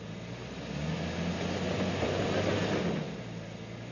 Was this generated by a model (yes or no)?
no